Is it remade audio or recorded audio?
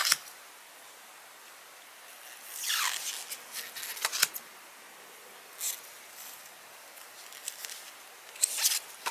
recorded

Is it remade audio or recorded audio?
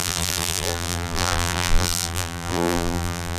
remade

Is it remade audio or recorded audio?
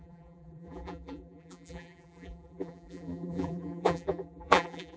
remade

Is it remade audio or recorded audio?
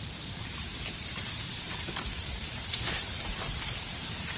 remade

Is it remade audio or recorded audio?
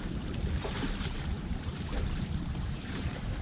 remade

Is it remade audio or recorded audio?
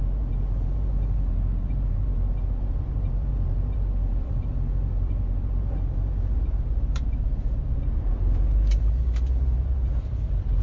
remade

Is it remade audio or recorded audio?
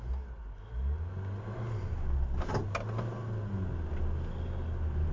recorded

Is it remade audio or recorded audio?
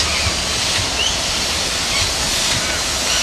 remade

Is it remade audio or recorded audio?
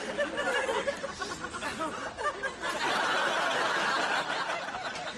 recorded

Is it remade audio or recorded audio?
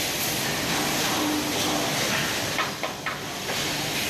recorded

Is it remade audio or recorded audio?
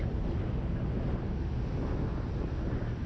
recorded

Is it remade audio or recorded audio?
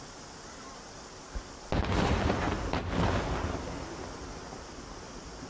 recorded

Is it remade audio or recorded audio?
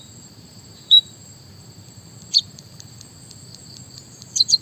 remade